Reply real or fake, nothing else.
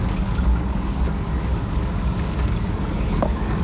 fake